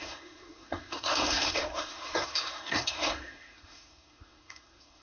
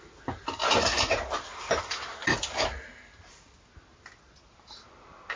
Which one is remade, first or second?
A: first